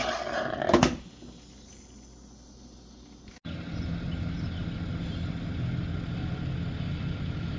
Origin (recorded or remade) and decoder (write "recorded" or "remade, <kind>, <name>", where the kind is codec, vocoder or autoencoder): recorded